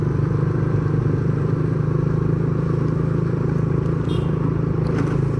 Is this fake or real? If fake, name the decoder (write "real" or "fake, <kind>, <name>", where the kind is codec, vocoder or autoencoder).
fake, vocoder, BigVGAN v2